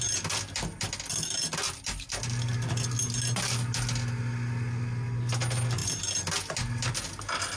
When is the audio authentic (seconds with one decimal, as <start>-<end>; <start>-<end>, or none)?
0.0-7.6